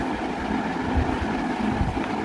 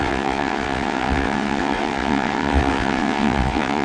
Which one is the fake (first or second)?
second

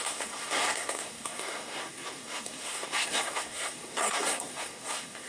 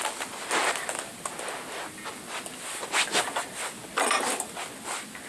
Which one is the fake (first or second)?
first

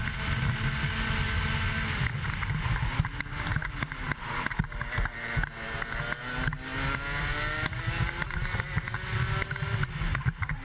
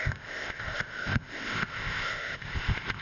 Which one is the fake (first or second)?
second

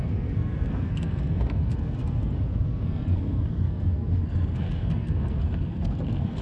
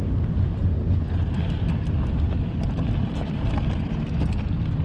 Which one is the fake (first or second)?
first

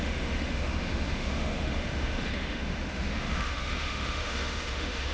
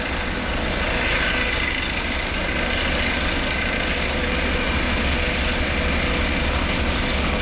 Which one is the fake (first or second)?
first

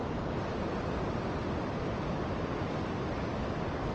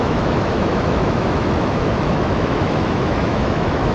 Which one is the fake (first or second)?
second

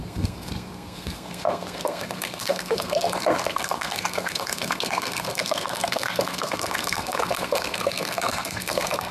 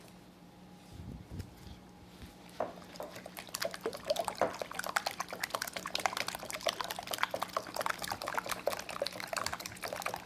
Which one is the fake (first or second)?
first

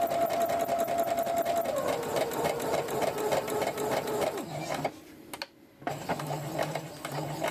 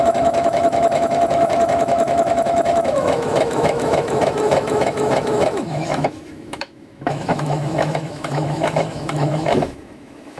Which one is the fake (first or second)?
second